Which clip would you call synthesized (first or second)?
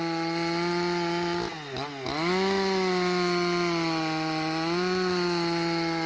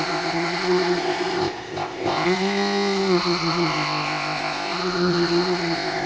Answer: second